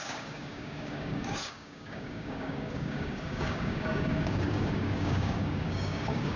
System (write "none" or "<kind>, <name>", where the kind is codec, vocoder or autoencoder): codec, DAC